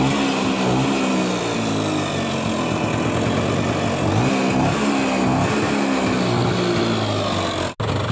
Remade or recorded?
recorded